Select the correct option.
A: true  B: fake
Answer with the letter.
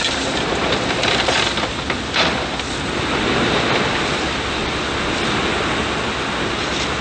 A